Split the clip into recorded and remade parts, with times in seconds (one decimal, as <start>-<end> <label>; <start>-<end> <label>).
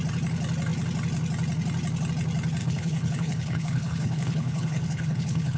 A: 0.0-2.6 recorded; 2.6-5.6 remade